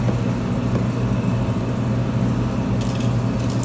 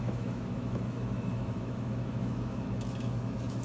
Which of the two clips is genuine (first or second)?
first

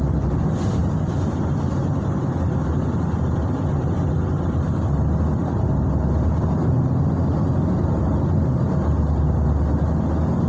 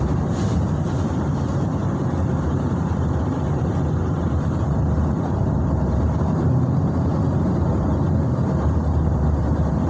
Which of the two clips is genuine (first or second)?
first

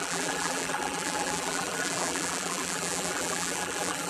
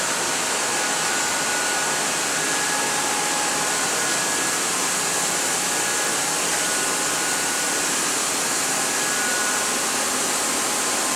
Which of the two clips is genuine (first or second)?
second